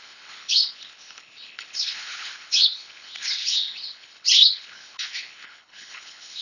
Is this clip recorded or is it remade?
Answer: remade